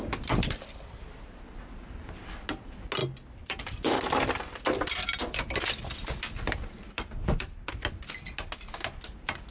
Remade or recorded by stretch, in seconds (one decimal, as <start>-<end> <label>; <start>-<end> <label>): 0.0-9.5 recorded

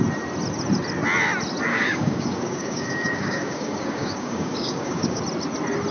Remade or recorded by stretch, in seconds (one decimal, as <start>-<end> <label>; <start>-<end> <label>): 0.0-1.7 recorded; 1.7-5.2 remade; 5.2-5.9 recorded

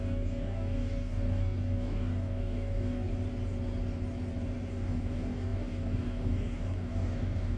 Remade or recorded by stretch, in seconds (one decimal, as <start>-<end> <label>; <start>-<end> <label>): 0.0-3.1 remade; 3.1-4.7 recorded; 4.7-7.6 remade